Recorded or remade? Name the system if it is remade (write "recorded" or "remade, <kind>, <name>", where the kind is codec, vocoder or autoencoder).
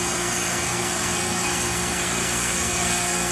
remade, codec, SNAC